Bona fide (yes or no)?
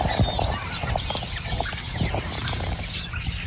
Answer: yes